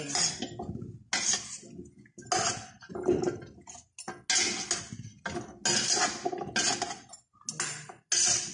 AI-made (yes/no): no